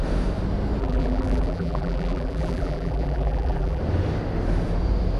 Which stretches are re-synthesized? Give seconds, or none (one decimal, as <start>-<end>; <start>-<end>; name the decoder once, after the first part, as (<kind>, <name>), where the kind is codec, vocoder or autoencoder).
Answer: 0.8-3.8 (vocoder, BigVGAN v2)